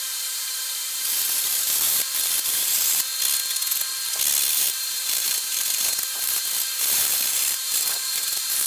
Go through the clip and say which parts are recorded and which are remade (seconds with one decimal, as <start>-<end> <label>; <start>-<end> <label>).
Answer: 0.0-3.1 remade; 3.1-4.5 recorded; 4.5-8.7 remade